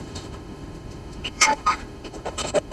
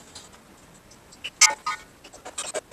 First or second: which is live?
second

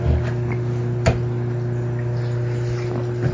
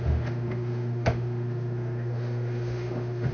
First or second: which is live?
first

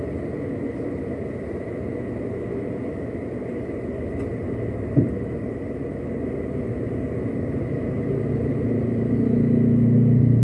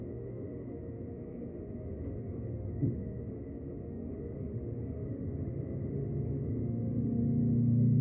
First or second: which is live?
first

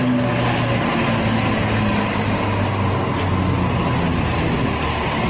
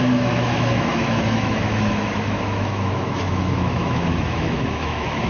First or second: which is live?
first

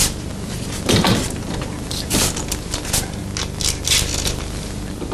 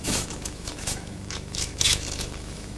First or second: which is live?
first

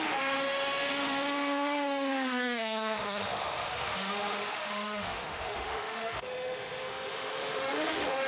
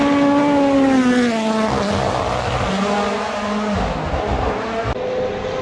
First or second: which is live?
second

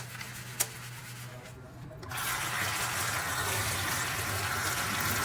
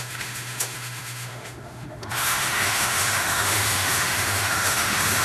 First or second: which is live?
first